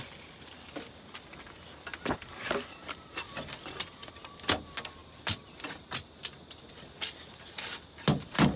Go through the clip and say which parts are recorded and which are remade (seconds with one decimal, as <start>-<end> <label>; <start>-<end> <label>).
0.0-8.6 recorded